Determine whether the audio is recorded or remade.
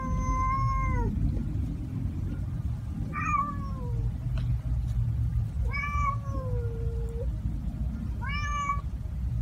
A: recorded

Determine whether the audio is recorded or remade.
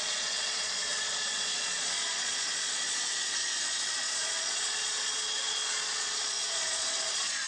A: remade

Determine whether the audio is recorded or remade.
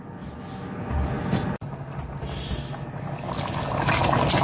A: recorded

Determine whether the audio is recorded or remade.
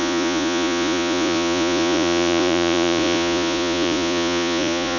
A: remade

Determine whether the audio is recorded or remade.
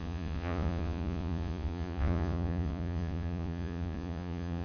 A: remade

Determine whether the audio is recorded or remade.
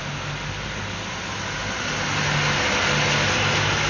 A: recorded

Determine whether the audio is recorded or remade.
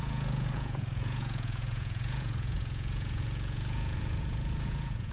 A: remade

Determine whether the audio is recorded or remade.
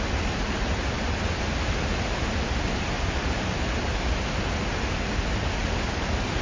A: recorded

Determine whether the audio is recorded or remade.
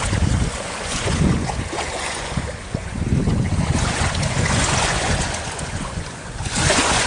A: remade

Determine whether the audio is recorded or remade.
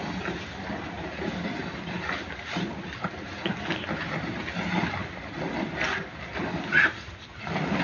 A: recorded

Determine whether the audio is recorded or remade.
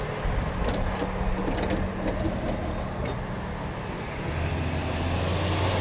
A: recorded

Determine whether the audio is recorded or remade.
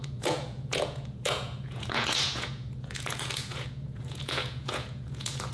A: remade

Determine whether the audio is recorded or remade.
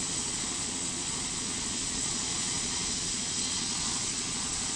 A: remade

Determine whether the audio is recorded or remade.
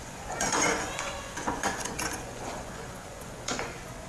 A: remade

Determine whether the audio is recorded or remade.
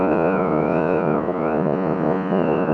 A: remade